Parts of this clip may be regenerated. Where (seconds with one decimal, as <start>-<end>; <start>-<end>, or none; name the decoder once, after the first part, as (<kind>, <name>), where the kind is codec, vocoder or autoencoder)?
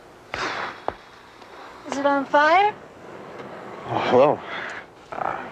1.6-4.5 (codec, DAC)